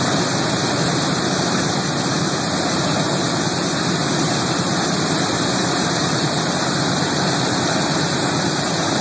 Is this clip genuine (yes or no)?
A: no